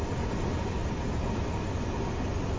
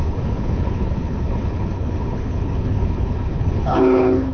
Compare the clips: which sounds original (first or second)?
first